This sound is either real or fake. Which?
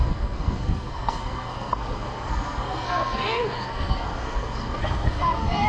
fake